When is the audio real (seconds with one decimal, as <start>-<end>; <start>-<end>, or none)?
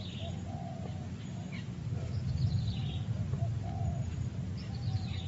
0.0-5.3